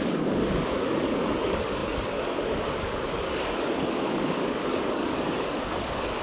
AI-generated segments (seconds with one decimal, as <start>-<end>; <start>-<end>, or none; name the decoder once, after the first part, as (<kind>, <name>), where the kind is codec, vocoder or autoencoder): 0.0-6.2 (codec, DAC)